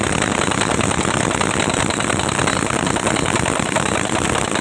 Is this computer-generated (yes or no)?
no